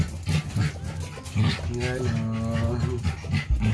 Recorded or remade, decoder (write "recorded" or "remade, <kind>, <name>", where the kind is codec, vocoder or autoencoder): recorded